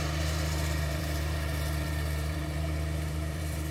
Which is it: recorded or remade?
remade